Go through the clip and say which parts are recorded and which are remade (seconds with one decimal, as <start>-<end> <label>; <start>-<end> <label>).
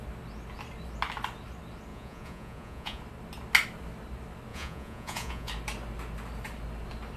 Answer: 0.0-1.9 recorded; 1.9-3.0 remade; 3.0-4.5 recorded; 4.5-5.5 remade; 5.5-7.2 recorded